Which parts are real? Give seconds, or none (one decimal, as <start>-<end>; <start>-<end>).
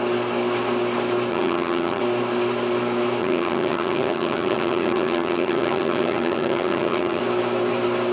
0.0-1.3; 2.0-3.2; 7.2-8.1